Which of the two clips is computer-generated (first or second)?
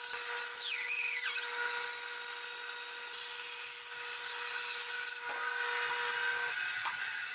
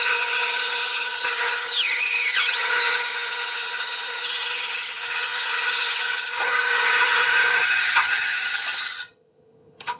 second